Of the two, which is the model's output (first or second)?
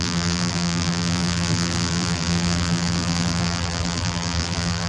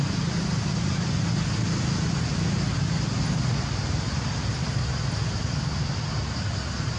first